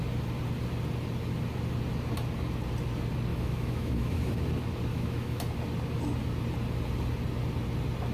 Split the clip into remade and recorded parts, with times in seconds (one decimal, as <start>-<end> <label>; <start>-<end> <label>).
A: 0.0-3.3 recorded; 3.3-4.3 remade; 4.3-4.9 recorded; 4.9-5.4 remade; 5.4-8.1 recorded